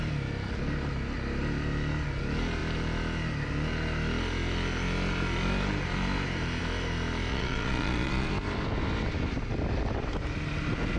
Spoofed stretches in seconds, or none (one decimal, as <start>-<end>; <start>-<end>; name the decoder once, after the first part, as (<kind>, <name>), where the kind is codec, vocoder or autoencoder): 7.3-8.3 (vocoder, Vocos)